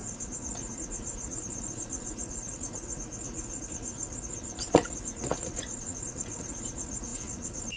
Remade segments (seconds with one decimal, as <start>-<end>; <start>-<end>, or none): 0.0-7.8